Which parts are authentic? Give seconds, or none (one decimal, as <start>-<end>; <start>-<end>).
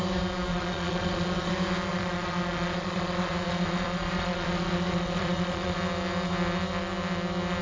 0.0-0.5; 1.5-1.9; 5.8-7.6